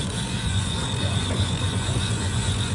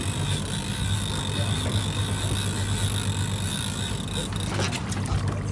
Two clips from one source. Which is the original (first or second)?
second